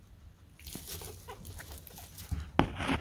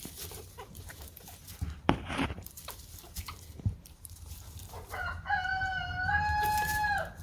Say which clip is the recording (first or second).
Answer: first